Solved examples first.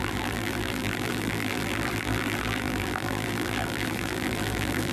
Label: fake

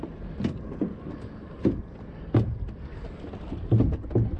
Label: real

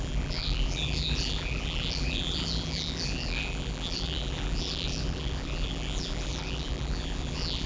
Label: fake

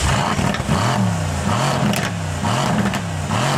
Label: real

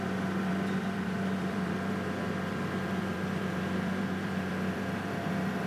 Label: fake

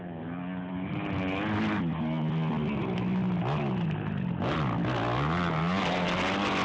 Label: real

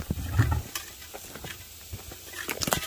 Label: real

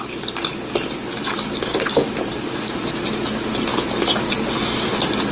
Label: real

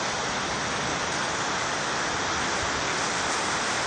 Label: real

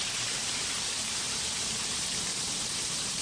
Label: fake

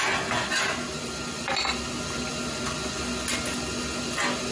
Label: real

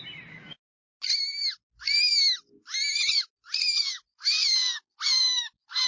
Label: real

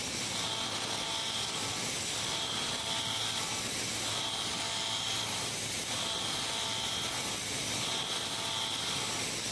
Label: real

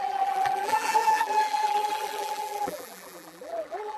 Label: fake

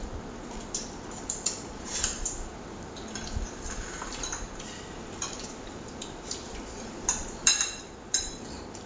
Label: fake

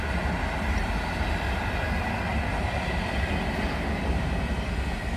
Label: real